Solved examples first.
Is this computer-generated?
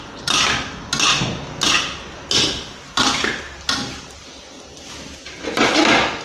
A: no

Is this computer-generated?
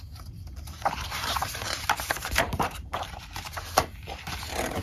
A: yes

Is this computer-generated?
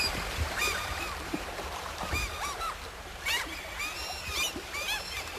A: yes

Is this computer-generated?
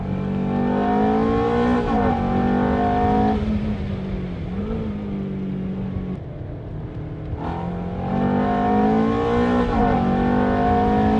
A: no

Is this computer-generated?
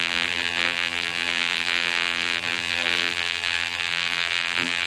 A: yes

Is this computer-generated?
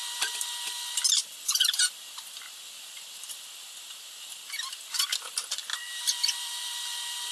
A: yes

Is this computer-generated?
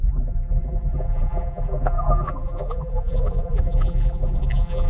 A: yes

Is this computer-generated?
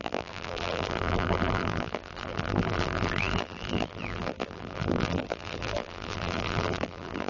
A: yes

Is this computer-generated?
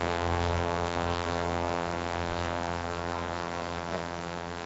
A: yes